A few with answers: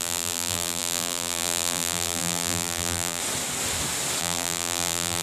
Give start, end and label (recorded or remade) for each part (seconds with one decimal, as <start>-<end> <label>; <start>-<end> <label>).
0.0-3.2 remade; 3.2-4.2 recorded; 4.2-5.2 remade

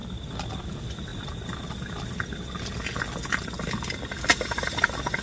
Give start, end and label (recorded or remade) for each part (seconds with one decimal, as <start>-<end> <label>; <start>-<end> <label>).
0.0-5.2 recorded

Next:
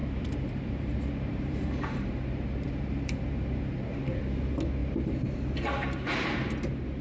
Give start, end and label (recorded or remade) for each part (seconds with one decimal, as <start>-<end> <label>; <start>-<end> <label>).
0.0-4.2 remade; 4.2-4.8 recorded; 4.8-5.7 remade; 5.7-7.0 recorded

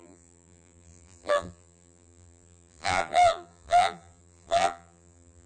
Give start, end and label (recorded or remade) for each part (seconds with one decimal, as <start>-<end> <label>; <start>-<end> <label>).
0.0-5.5 remade